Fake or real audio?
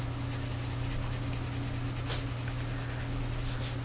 real